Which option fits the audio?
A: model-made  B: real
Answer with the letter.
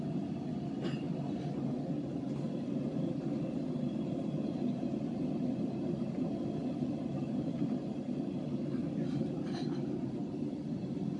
A